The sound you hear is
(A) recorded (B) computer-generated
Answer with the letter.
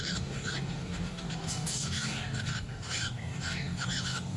B